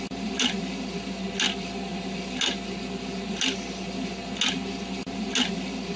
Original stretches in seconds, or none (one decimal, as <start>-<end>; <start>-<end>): 0.0-6.0